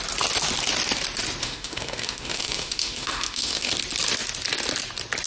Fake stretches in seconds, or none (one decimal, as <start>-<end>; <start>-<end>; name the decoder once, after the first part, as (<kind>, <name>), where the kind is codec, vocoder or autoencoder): 1.4-3.7 (autoencoder, DAC-VAE)